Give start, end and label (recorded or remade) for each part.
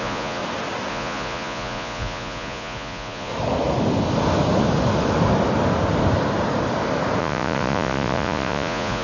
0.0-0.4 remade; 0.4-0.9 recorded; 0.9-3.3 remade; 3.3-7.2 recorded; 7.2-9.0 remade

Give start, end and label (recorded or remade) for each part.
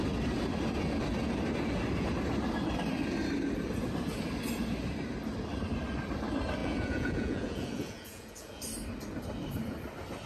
0.0-6.6 recorded; 6.6-8.6 remade; 8.6-10.3 recorded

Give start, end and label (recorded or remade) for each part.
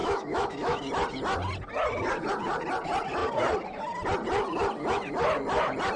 0.0-0.8 remade; 0.8-6.0 recorded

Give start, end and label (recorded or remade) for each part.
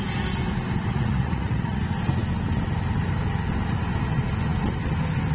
0.0-0.9 recorded; 0.9-1.8 remade; 1.8-5.3 recorded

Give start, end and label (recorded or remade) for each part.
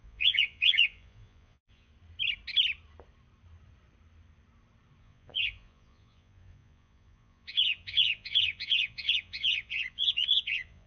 0.0-1.9 remade; 1.9-5.0 recorded; 5.0-10.9 remade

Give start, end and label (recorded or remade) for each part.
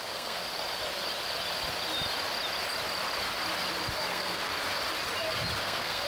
0.0-0.4 remade; 0.4-4.1 recorded; 4.1-4.5 remade; 4.5-5.6 recorded; 5.6-6.1 remade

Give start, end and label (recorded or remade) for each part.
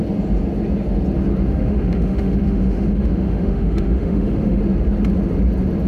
0.0-1.5 recorded; 1.5-4.6 remade; 4.6-5.9 recorded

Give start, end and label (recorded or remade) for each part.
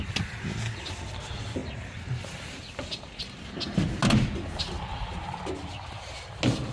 0.0-6.7 recorded